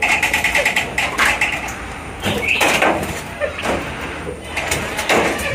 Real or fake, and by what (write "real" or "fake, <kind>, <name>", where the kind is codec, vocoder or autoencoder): fake, vocoder, BigVGAN v2